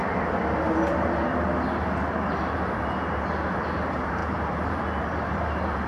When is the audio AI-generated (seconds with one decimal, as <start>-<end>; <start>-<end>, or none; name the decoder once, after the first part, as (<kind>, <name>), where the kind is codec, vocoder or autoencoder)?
3.5-4.2 (vocoder, BigVGAN v2); 5.0-5.9

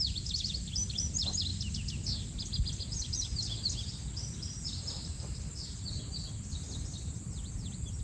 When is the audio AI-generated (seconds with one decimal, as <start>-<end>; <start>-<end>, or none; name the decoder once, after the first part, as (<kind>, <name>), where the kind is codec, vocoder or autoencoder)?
none

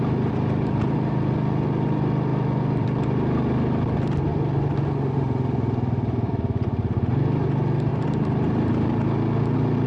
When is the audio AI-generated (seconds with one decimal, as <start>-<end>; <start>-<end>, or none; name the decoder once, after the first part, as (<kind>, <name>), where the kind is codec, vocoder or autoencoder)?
4.3-7.1 (vocoder, BigVGAN v2); 7.9-8.9

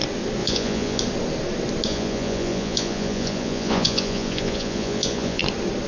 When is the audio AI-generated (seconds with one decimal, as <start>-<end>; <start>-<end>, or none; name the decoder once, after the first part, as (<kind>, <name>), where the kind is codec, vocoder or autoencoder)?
0.4-1.0 (vocoder, Vocos); 1.9-5.4